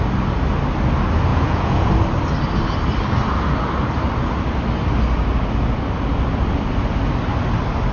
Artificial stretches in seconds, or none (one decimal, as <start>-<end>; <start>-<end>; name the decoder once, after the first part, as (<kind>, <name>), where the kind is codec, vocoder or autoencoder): 1.3-1.9 (vocoder, Vocos)